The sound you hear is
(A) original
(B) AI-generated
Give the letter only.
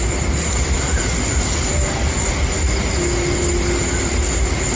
A